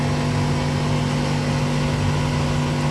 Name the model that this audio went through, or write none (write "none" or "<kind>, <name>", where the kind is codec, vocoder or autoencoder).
none